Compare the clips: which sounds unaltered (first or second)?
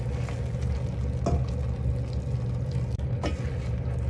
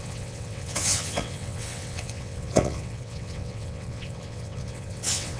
first